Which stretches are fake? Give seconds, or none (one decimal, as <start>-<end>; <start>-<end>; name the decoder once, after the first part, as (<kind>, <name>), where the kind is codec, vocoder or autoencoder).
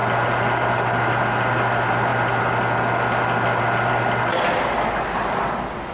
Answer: none